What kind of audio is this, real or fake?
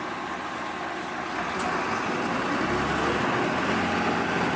real